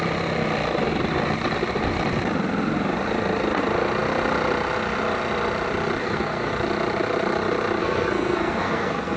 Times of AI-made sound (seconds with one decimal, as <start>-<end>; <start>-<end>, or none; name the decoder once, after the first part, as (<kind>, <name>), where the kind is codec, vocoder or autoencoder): 6.0-6.5 (codec, SNAC); 7.8-9.2